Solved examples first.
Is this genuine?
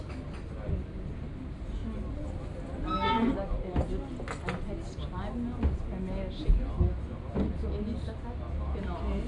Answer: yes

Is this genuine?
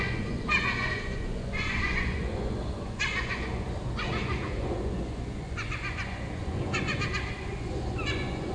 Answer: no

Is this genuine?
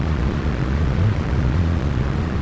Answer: no